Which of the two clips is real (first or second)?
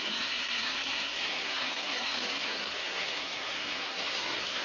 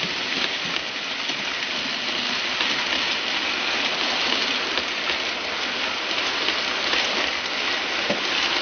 second